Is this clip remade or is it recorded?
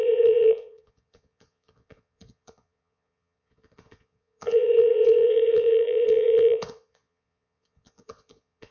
remade